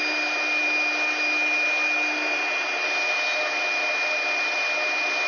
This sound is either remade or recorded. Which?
recorded